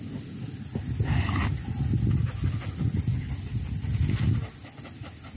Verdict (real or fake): real